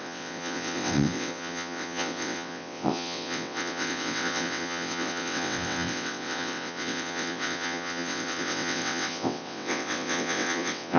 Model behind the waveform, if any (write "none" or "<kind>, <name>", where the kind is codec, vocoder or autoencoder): vocoder, WaveNeXt